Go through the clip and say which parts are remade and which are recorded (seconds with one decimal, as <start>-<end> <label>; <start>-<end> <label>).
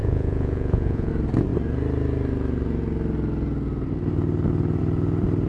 0.0-1.1 remade; 1.1-5.5 recorded